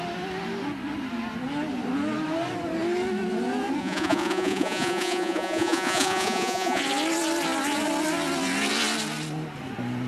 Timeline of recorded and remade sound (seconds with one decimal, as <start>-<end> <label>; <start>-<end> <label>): 0.0-3.8 recorded; 3.8-6.8 remade; 6.8-10.1 recorded